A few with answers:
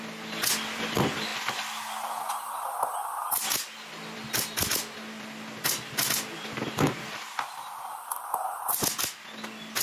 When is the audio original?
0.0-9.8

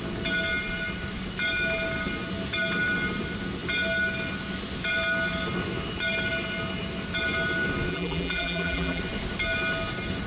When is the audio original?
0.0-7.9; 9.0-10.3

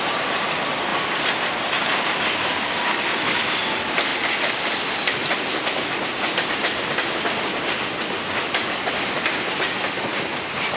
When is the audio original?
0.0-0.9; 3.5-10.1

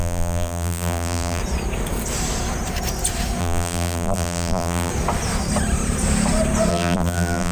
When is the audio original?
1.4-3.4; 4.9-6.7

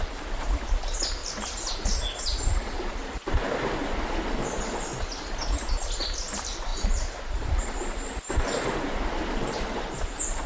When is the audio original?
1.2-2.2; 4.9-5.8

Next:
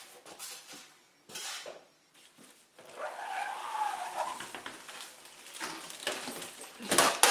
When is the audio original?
0.0-1.4; 2.3-2.7; 4.9-6.0; 6.6-7.3

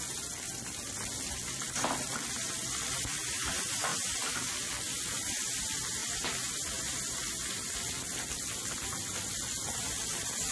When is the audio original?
0.0-10.5

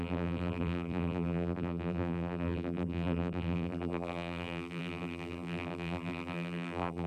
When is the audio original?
none